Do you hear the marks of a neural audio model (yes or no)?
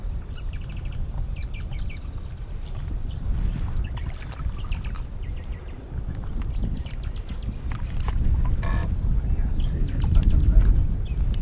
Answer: no